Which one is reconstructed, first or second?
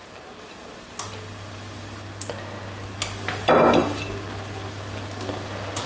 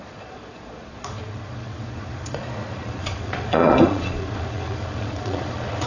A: second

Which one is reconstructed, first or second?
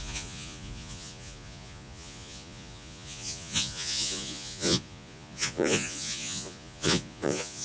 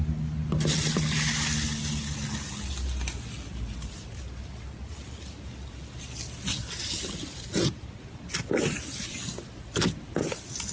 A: first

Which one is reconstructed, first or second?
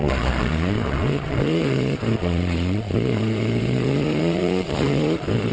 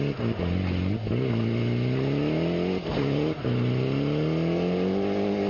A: first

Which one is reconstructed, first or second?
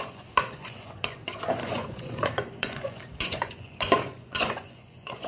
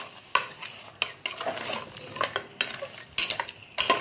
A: first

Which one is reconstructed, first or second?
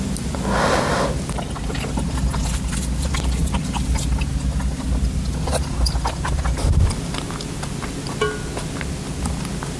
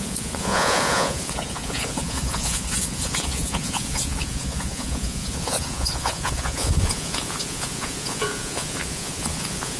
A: second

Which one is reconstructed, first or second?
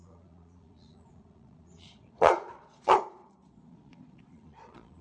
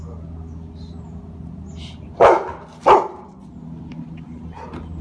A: first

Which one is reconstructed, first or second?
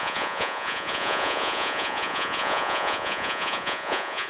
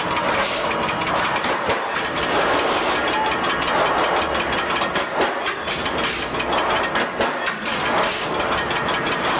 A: first